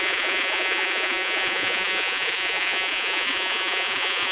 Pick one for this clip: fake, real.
fake